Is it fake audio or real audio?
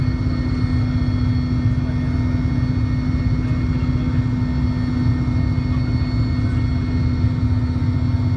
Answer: real